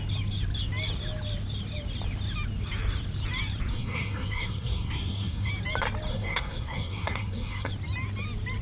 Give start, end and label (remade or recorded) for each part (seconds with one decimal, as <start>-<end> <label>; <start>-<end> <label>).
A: 0.0-3.7 recorded; 3.7-5.5 remade; 5.5-6.1 recorded; 6.1-7.7 remade; 7.7-8.6 recorded